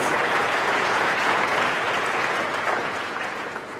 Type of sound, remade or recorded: remade